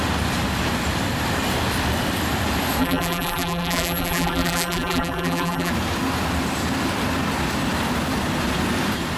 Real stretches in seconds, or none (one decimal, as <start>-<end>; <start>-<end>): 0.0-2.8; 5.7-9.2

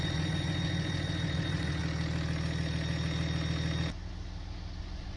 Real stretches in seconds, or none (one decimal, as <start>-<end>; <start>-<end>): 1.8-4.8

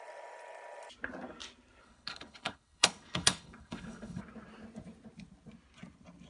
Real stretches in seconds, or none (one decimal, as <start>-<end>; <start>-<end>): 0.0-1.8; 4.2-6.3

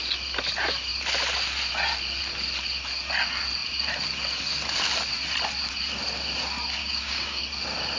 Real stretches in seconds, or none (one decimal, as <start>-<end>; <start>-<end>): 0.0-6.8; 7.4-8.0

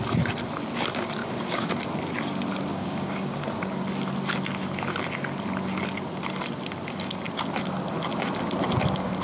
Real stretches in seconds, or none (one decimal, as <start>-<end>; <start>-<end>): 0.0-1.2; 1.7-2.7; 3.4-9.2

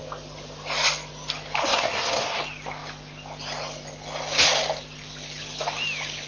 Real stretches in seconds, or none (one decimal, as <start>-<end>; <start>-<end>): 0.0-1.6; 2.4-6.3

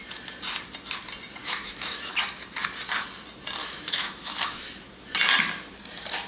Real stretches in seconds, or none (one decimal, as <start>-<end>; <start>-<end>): 0.0-1.4; 2.1-3.6; 4.8-6.3